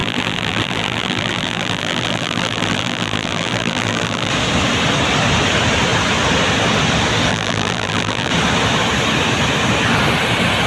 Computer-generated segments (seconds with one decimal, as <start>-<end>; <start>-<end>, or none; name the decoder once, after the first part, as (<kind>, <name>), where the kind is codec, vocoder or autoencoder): 0.0-4.3 (vocoder, BigVGAN v2); 7.3-8.3